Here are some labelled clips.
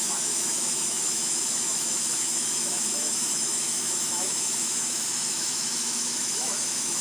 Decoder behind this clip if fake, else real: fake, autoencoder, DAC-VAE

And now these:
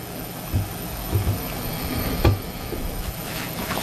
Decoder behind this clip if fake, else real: fake, autoencoder, DAC-VAE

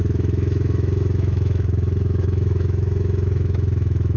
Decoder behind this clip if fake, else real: fake, autoencoder, DAC-VAE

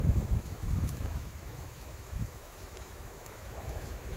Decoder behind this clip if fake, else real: fake, autoencoder, DAC-VAE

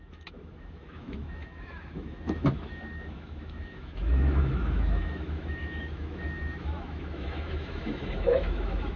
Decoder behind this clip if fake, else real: fake, autoencoder, DAC-VAE